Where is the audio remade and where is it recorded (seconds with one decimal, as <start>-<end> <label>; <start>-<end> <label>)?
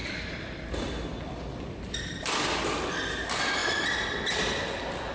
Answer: 0.0-5.1 recorded